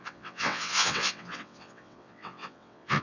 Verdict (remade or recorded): remade